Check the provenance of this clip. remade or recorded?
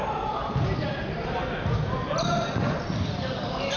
recorded